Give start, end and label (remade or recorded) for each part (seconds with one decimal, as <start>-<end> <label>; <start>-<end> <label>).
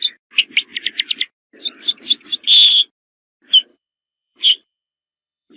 0.0-3.7 recorded; 3.7-5.6 remade